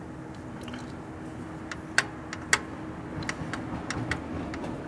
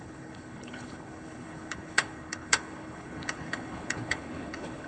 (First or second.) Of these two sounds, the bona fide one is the first